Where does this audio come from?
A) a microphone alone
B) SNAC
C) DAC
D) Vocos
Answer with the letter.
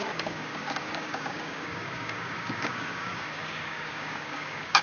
C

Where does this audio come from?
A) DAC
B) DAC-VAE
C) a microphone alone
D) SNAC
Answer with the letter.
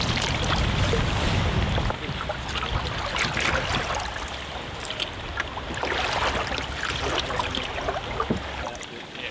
C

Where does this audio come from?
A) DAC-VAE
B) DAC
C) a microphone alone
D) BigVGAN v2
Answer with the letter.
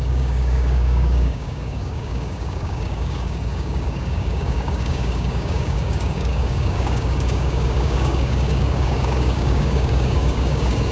B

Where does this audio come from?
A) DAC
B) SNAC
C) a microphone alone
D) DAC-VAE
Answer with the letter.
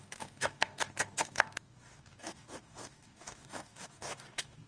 A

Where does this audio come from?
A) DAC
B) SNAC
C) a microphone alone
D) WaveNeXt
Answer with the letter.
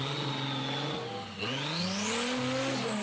C